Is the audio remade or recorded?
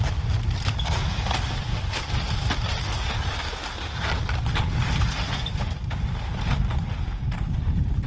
recorded